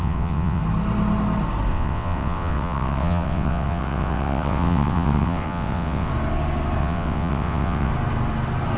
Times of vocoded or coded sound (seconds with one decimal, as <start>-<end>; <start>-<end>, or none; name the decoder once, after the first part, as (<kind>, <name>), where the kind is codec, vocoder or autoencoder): 0.0-0.6 (vocoder, WaveNeXt); 1.7-6.1; 6.8-7.9